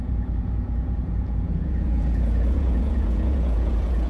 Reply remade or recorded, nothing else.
remade